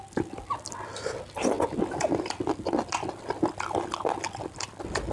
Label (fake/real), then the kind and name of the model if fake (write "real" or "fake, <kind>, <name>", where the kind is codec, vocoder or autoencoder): real